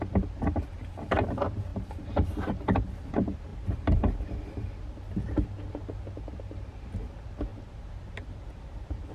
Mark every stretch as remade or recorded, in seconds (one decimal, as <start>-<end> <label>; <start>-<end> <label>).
0.0-1.7 recorded; 1.7-3.1 remade; 3.1-3.5 recorded; 3.5-4.8 remade; 4.8-7.5 recorded; 7.5-9.1 remade